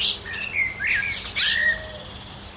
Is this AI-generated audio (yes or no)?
no